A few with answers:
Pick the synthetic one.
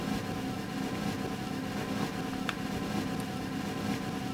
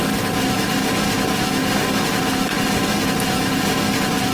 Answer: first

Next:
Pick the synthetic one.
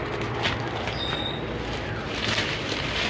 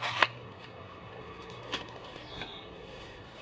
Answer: second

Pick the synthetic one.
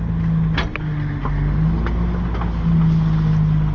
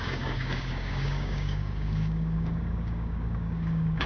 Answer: second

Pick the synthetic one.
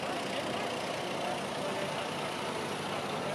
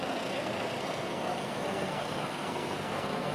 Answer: second